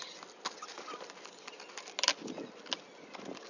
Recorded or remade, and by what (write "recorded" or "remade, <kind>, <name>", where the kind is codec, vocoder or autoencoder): recorded